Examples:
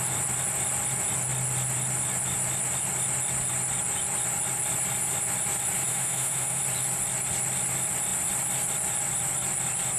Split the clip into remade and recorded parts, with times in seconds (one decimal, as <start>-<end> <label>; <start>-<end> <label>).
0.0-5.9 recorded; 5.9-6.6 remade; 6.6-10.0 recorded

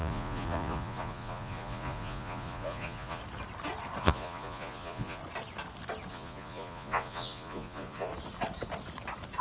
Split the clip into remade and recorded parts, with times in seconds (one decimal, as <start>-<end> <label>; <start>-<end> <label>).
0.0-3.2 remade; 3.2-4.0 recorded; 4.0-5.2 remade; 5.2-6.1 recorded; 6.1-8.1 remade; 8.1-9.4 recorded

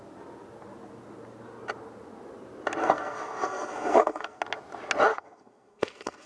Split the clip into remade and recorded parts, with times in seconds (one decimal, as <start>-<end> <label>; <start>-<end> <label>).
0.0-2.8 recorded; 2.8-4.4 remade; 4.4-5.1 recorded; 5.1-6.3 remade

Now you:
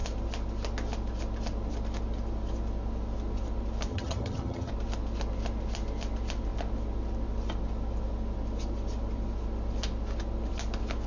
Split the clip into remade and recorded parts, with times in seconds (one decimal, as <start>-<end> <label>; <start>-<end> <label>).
0.0-3.9 recorded; 3.9-4.7 remade; 4.7-11.1 recorded